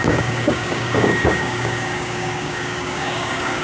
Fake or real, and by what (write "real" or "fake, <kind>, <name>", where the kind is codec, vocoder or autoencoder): fake, codec, DAC